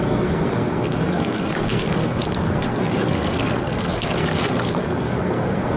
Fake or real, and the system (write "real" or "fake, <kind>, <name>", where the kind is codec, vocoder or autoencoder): fake, codec, SNAC